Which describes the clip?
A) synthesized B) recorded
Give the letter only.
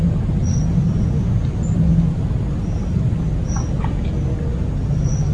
B